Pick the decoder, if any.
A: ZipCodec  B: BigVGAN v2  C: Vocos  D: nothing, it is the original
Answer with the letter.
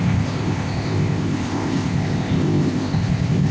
A